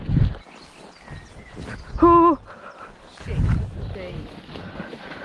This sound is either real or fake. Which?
real